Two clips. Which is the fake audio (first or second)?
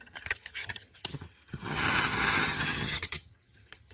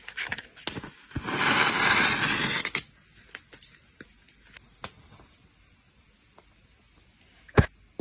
first